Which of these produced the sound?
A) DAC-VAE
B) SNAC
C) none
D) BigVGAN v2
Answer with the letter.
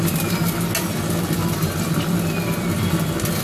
C